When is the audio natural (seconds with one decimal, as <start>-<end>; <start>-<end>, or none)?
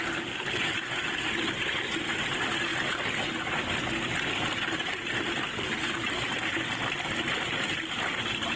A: 0.0-8.6